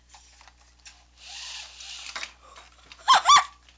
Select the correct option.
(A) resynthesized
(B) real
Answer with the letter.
B